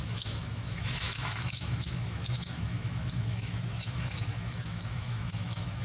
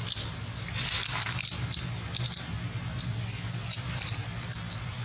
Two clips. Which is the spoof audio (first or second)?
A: first